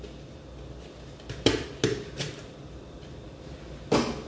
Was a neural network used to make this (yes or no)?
no